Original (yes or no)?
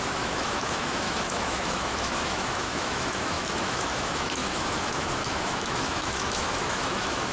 no